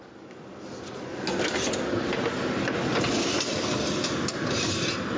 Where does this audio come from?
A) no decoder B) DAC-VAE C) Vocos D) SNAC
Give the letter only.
A